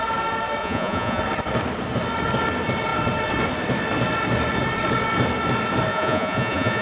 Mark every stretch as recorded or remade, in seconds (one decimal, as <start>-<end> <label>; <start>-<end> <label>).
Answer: 0.0-0.6 recorded; 0.6-1.2 remade; 1.2-5.9 recorded; 5.9-6.8 remade